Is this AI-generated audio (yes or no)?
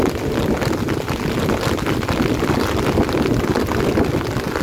no